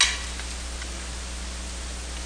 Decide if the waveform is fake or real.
real